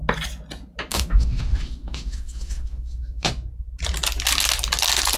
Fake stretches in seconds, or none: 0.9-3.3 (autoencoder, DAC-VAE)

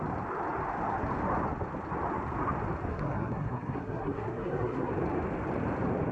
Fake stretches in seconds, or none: 2.9-4.9 (codec, SNAC)